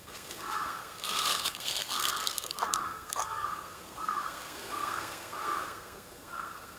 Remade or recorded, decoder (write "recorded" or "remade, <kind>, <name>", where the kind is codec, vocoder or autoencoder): remade, codec, SNAC